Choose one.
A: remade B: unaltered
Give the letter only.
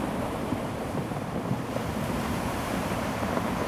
A